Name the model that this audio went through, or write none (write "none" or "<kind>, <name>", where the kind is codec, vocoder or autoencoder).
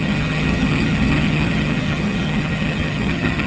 vocoder, HiFi-GAN